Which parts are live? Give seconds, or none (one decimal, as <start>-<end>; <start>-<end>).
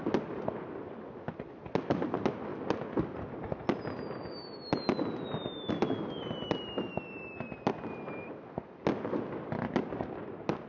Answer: 0.0-10.7